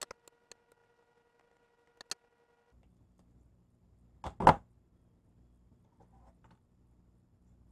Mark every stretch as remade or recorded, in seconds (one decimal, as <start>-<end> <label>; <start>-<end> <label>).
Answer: 0.0-7.7 recorded